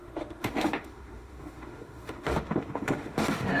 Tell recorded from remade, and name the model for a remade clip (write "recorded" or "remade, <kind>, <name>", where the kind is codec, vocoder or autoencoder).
remade, autoencoder, DAC-VAE